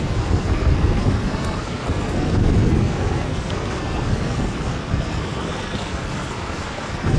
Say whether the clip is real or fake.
fake